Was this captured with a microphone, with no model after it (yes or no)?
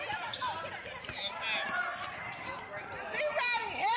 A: yes